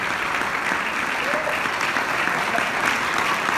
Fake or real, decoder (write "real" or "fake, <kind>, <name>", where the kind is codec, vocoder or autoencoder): real